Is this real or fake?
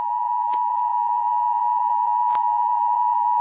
fake